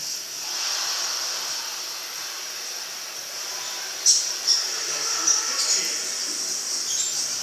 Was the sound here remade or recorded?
remade